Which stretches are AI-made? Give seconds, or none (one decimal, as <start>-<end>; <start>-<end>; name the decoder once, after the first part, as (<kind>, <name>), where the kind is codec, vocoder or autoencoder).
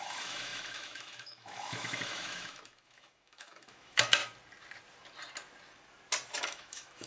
0.0-4.2 (autoencoder, DAC-VAE); 6.4-7.1